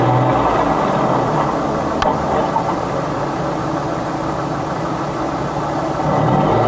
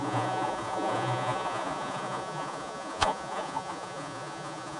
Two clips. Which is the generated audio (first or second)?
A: second